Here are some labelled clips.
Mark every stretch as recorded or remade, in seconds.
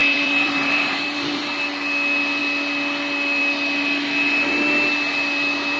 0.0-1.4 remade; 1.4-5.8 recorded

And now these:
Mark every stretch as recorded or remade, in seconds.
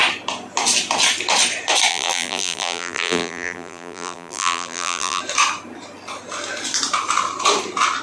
0.0-1.9 recorded; 1.9-5.2 remade; 5.2-8.0 recorded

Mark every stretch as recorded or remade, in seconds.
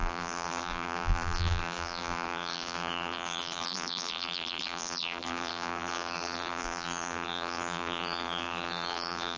0.0-9.4 remade